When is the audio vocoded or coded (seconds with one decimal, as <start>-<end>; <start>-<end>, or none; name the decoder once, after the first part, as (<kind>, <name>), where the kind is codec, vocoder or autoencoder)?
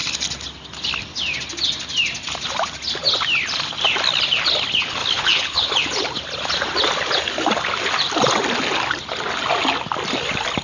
5.0-5.7 (codec, HILCodec)